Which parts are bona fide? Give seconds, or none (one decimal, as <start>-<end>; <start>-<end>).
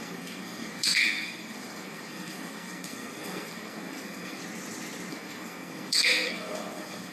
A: 4.4-5.1